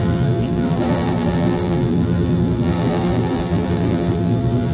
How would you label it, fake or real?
fake